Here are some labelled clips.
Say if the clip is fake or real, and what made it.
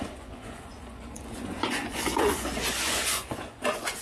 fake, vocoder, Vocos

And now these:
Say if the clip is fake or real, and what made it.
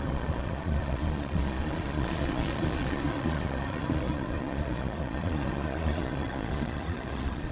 fake, vocoder, Vocos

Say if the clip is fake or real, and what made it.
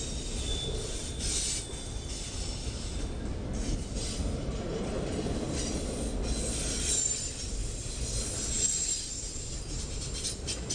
real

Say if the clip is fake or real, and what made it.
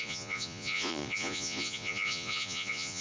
fake, vocoder, Vocos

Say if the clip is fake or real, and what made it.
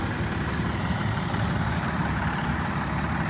real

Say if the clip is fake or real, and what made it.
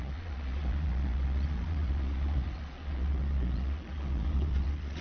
fake, vocoder, Vocos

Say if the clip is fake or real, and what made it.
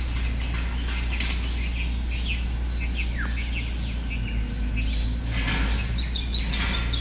real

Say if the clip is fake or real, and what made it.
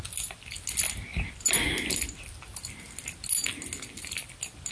real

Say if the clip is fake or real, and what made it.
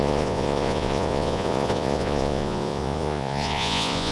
fake, vocoder, Vocos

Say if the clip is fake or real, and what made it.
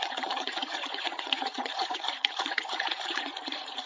fake, vocoder, Vocos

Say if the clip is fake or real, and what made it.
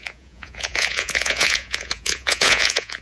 fake, vocoder, Vocos